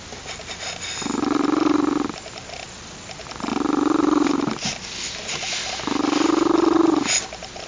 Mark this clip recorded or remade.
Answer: recorded